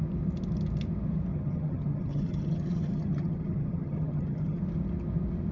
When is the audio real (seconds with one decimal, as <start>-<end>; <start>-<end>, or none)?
0.0-1.3; 4.6-5.5